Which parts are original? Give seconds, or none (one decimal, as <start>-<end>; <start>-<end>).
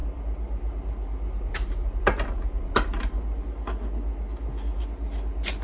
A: 3.4-5.6